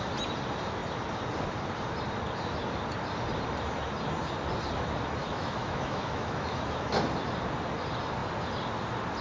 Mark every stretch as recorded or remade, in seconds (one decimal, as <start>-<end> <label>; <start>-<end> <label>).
0.0-5.2 recorded; 5.2-7.0 remade; 7.0-9.2 recorded